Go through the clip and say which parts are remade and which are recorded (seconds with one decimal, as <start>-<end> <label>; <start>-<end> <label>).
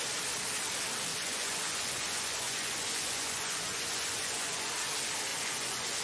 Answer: 0.0-1.1 recorded; 1.1-4.7 remade; 4.7-5.3 recorded; 5.3-6.0 remade